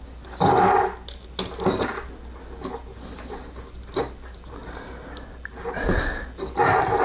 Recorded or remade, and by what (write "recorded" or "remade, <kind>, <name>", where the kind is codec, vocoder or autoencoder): recorded